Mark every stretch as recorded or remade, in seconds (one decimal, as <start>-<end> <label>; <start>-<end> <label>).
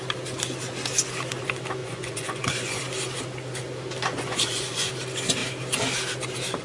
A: 0.0-1.8 recorded; 1.8-2.8 remade; 2.8-4.1 recorded; 4.1-4.9 remade; 4.9-6.6 recorded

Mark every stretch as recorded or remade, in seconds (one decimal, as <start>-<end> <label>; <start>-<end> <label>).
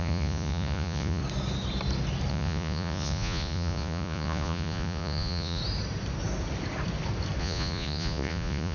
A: 0.0-1.2 remade; 1.2-2.3 recorded; 2.3-5.6 remade; 5.6-7.4 recorded; 7.4-8.7 remade